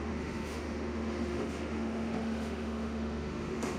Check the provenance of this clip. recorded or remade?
remade